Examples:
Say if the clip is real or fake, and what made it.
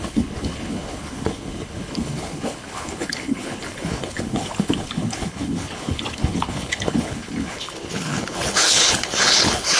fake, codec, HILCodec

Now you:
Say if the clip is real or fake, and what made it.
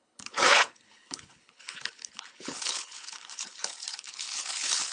fake, codec, HILCodec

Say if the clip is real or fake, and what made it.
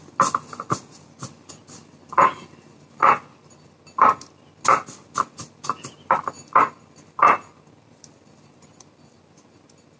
real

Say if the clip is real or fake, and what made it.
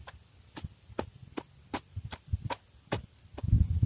real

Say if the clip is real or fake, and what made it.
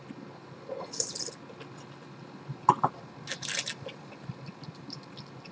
real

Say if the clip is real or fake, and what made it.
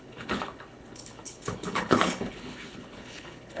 fake, codec, HILCodec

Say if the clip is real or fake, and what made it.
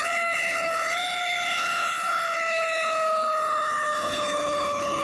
fake, codec, HILCodec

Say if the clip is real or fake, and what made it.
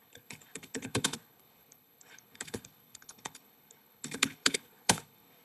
fake, codec, HILCodec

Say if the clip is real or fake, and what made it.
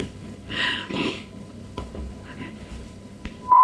fake, codec, HILCodec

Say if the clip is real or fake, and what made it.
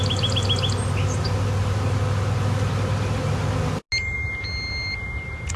real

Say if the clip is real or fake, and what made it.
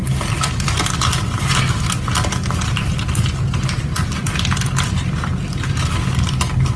real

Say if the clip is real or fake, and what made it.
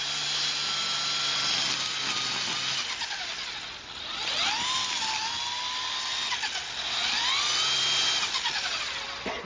real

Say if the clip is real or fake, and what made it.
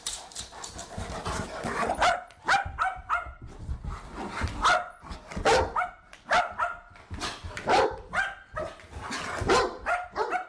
real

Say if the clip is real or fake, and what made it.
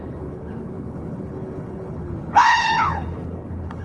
fake, codec, HILCodec